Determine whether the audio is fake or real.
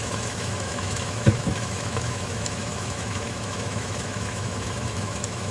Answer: fake